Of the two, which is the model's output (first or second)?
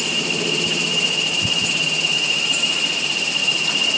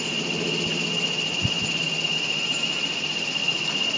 first